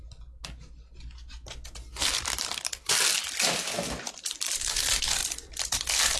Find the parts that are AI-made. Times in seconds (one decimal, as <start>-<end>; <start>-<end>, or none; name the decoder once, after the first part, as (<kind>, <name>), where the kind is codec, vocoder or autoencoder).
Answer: 2.0-4.8 (vocoder, BigVGAN v2); 5.2-6.2